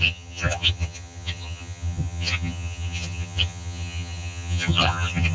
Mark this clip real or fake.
fake